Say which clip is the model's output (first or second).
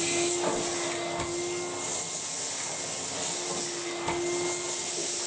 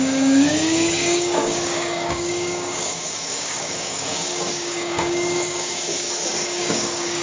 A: second